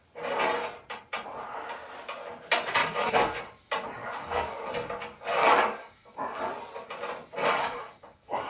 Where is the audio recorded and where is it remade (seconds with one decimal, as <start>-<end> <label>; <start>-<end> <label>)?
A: 0.0-2.8 recorded; 2.8-3.4 remade; 3.4-4.0 recorded; 4.0-4.7 remade; 4.7-5.4 recorded; 5.4-6.5 remade; 6.5-7.4 recorded; 7.4-8.5 remade